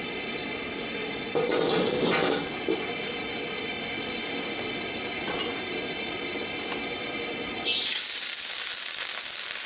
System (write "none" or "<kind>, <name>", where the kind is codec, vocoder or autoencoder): none